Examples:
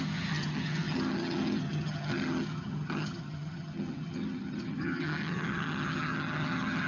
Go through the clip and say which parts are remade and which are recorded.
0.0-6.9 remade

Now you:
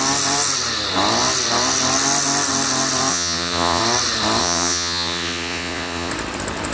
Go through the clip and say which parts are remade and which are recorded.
0.0-3.1 recorded; 3.1-3.8 remade; 3.8-4.4 recorded; 4.4-6.1 remade; 6.1-6.7 recorded

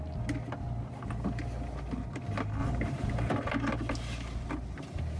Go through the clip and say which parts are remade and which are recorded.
0.0-5.2 recorded

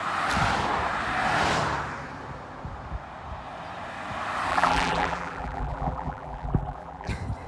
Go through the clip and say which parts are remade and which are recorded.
0.0-4.5 recorded; 4.5-7.1 remade; 7.1-7.5 recorded

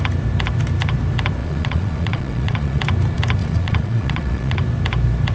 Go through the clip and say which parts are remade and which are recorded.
0.0-1.4 recorded; 1.4-2.8 remade; 2.8-3.4 recorded; 3.4-4.6 remade; 4.6-5.3 recorded

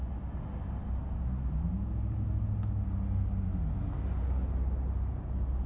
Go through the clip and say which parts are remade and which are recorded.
0.0-5.7 recorded